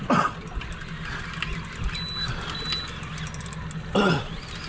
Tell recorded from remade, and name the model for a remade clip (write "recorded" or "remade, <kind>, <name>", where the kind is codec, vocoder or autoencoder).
recorded